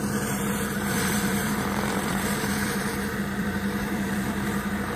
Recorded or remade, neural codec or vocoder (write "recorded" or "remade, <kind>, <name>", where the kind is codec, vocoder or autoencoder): remade, vocoder, BigVGAN v2